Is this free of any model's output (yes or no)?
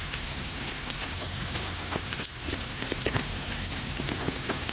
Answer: no